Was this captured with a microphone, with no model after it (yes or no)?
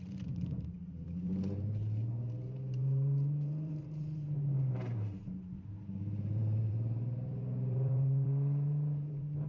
no